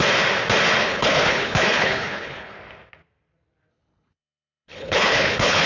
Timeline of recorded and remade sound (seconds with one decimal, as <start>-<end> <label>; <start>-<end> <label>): 0.0-0.8 recorded; 0.8-2.6 remade; 2.6-3.7 recorded; 3.7-5.7 remade